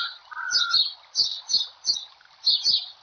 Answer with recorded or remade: recorded